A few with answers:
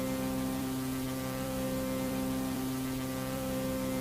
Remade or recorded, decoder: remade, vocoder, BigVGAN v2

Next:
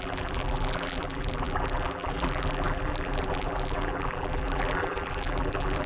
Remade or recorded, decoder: remade, vocoder, BigVGAN v2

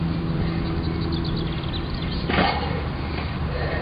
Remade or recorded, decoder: recorded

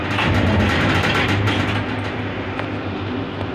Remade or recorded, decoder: recorded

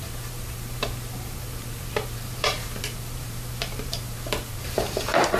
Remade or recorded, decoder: remade, vocoder, BigVGAN v2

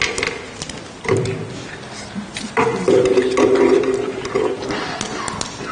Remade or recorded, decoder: recorded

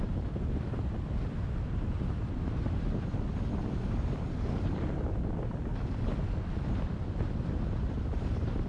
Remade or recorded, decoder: remade, vocoder, BigVGAN v2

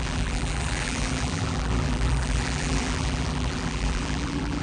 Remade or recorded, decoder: remade, vocoder, BigVGAN v2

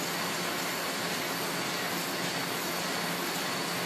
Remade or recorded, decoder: recorded